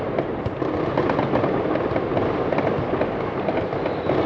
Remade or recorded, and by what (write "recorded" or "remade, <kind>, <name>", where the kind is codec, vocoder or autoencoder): recorded